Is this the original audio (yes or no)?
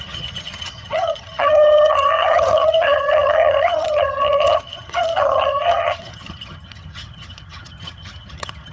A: no